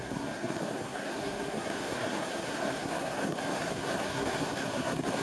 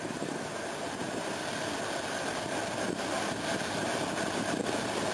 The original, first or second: second